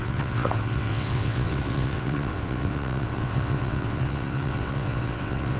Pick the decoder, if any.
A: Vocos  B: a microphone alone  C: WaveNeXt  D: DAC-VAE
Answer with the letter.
C